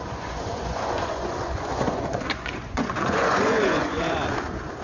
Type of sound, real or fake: fake